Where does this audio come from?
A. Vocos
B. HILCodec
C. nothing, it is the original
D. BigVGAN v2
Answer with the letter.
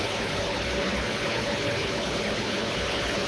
B